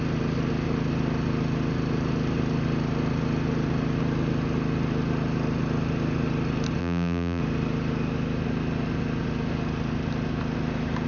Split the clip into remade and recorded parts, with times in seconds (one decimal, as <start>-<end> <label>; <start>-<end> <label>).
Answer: 0.0-6.8 recorded; 6.8-7.4 remade; 7.4-11.1 recorded